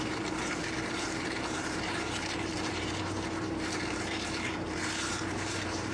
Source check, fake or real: fake